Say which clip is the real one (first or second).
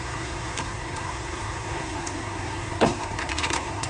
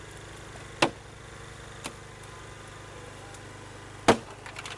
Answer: second